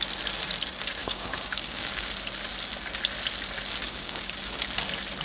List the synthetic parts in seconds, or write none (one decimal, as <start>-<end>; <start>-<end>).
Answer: 1.0-2.1; 3.8-4.4